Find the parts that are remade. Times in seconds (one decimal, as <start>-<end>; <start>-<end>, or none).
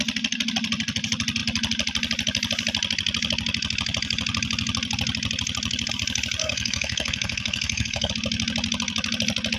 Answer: 6.4-8.1